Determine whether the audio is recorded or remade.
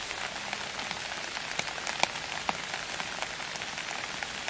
recorded